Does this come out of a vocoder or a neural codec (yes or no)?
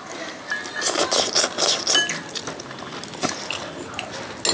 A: no